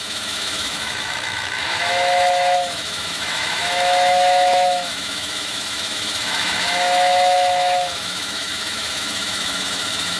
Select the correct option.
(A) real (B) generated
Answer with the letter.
B